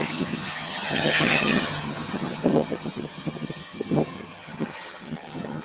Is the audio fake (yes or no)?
yes